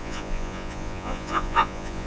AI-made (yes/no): yes